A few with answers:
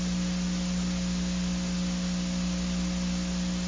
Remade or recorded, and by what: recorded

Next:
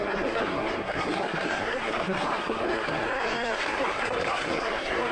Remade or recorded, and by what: remade, codec, SNAC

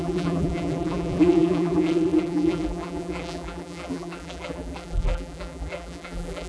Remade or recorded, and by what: remade, vocoder, BigVGAN v2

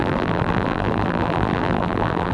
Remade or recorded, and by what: remade, vocoder, BigVGAN v2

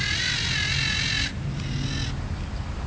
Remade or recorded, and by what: recorded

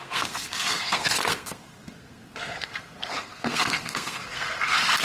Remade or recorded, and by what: remade, codec, SNAC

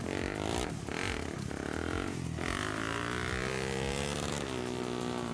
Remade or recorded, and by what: recorded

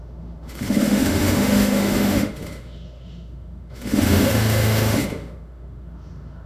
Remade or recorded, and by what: remade, autoencoder, DAC-VAE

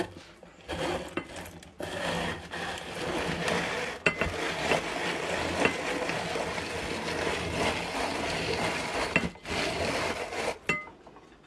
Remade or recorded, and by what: recorded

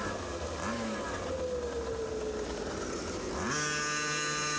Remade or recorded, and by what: recorded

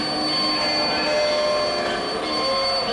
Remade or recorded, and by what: recorded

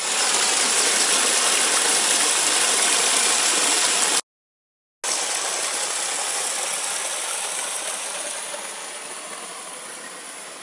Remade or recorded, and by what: recorded